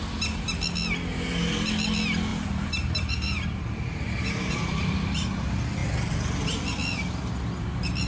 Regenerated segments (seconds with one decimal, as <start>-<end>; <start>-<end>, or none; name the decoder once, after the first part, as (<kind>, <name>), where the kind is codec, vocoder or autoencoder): 2.3-4.9 (vocoder, BigVGAN v2)